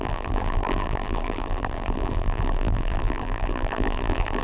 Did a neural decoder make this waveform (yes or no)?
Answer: yes